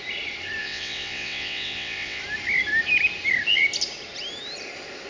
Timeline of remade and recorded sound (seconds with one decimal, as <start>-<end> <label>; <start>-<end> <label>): 0.0-0.6 recorded; 0.6-2.2 remade; 2.2-5.1 recorded